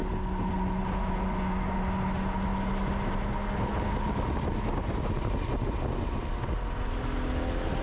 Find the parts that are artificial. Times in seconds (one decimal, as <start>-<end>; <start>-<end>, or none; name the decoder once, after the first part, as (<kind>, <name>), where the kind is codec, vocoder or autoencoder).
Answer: none